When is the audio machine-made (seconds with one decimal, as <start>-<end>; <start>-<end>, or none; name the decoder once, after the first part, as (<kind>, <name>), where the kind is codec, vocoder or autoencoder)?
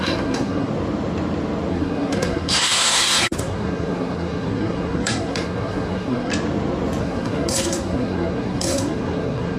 0.0-0.7 (codec, SNAC); 1.7-6.3; 7.0-9.6